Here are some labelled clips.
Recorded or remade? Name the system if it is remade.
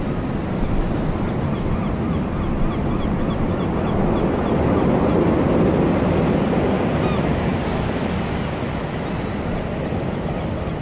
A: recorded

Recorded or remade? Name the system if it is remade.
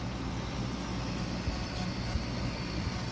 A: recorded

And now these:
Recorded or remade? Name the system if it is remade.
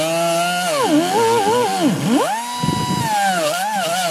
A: recorded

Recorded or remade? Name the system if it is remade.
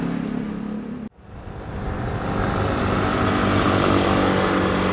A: recorded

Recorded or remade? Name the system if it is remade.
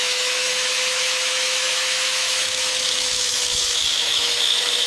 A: remade, autoencoder, DAC-VAE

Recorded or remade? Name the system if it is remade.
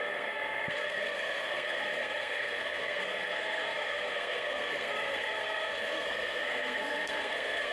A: remade, codec, SNAC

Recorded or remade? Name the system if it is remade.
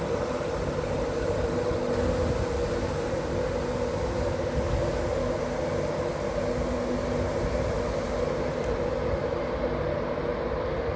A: recorded